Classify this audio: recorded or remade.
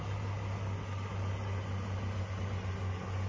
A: recorded